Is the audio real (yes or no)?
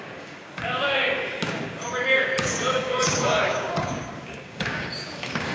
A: no